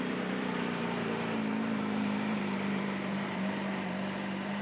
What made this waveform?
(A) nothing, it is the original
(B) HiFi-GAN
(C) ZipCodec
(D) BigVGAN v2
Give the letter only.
D